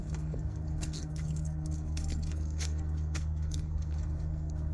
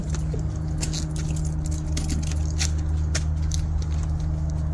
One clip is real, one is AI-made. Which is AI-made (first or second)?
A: first